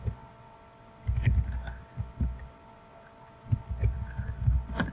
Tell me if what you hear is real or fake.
real